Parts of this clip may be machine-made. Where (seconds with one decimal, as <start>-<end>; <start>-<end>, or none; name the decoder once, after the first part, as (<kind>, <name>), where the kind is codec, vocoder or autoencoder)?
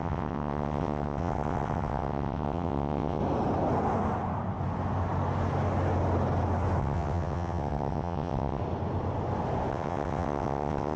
0.0-3.2 (vocoder, WaveNeXt); 6.8-8.6; 9.7-11.0